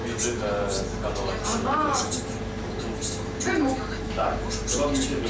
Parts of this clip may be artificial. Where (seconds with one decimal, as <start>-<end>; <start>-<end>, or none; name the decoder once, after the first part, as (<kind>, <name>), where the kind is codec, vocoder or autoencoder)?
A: none